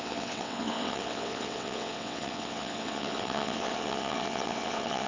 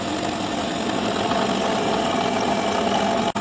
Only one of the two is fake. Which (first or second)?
first